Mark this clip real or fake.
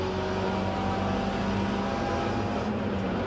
real